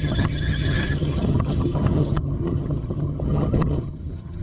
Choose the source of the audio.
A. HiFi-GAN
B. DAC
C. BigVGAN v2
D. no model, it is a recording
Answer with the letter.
A